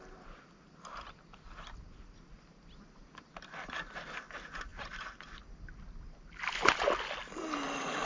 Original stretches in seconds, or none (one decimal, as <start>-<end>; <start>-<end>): 0.0-8.1